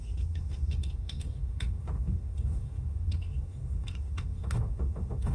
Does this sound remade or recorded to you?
remade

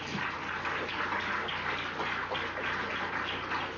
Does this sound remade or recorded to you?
recorded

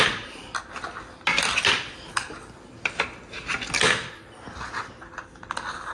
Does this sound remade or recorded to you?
recorded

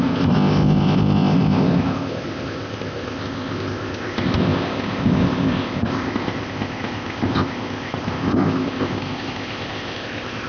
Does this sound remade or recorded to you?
remade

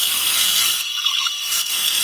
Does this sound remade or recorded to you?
remade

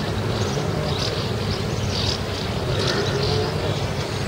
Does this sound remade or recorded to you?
recorded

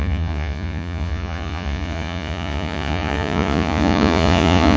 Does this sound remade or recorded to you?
remade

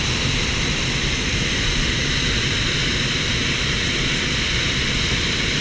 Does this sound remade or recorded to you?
recorded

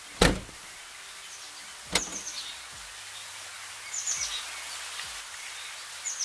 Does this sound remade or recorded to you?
recorded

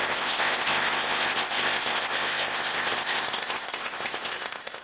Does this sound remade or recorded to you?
remade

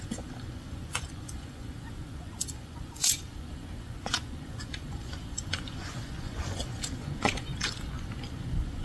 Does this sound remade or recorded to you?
remade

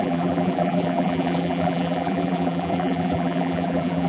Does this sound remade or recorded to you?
remade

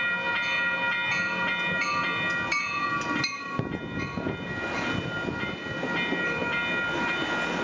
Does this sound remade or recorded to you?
recorded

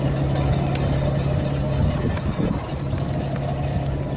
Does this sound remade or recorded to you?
recorded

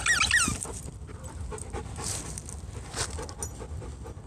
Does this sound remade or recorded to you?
recorded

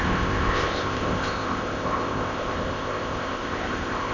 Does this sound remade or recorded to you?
remade